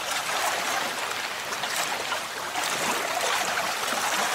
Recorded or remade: recorded